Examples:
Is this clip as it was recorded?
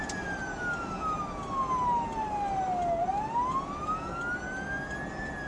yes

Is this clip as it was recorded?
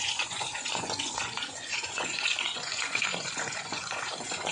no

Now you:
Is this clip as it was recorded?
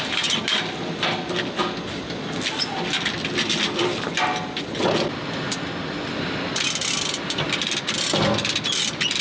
yes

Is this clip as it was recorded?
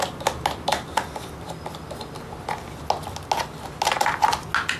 yes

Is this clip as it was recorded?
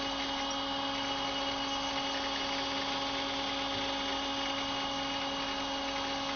yes